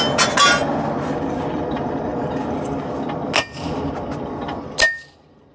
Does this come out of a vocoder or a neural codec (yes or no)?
no